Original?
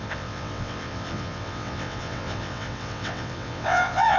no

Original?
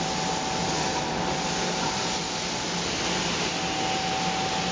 yes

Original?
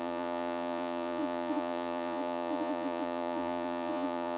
no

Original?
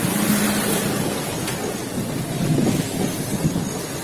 yes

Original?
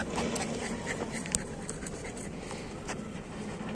yes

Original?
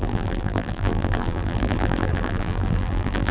no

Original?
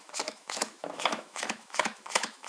no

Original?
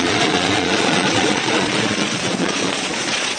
no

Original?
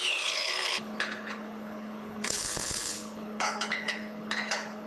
no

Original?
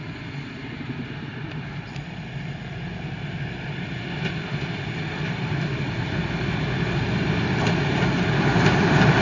yes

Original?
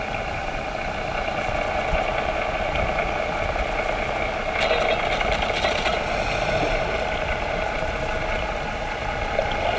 yes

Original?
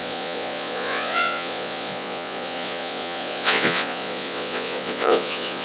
no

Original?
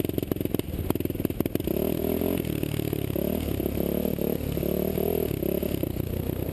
yes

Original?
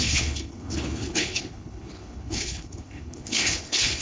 no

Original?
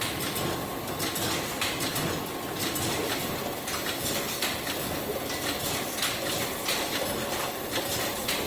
yes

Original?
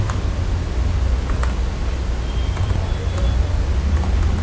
yes